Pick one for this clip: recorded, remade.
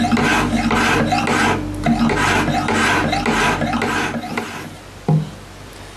recorded